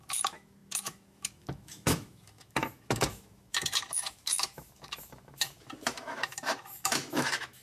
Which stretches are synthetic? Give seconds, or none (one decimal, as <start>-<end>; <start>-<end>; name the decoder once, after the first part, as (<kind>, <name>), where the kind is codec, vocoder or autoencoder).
0.0-7.6 (autoencoder, DAC-VAE)